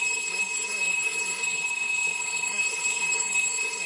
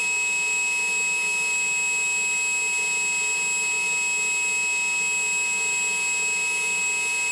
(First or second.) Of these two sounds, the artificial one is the first